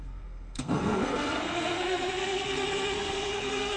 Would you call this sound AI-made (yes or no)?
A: yes